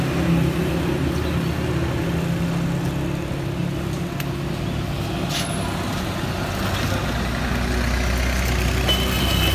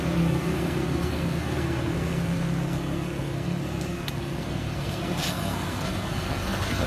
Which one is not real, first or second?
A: second